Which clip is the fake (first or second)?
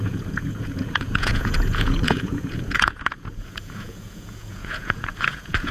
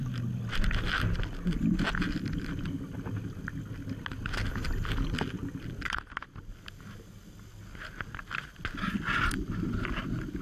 first